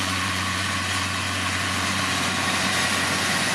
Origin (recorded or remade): remade